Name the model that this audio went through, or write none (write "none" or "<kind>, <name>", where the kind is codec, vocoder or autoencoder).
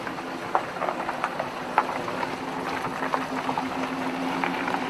none